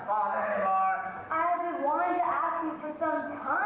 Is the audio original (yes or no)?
yes